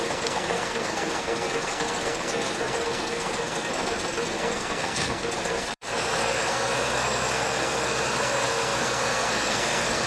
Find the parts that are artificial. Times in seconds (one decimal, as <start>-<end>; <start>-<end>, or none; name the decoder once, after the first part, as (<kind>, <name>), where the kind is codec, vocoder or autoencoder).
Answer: 0.0-10.1 (codec, SNAC)